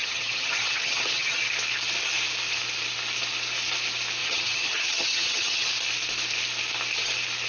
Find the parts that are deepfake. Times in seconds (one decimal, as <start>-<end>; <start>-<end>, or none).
0.0-1.5; 4.2-5.7

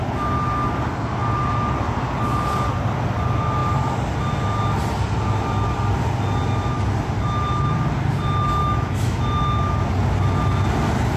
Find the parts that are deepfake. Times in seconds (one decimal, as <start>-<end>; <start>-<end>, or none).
8.6-9.2

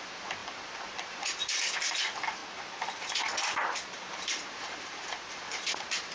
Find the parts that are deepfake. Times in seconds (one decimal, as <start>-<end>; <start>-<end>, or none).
0.0-2.4; 4.2-6.1

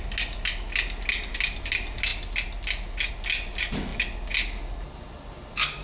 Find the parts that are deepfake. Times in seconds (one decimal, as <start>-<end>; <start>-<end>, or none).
none

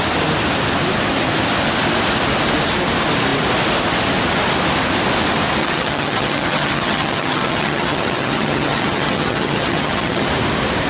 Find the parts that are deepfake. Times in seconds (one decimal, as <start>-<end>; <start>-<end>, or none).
5.6-10.3

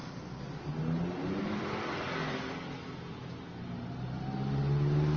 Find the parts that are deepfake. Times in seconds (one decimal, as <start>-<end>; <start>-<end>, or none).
none

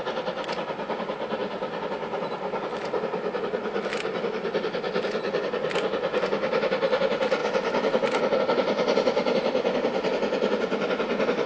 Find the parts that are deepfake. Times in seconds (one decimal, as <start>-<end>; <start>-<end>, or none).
none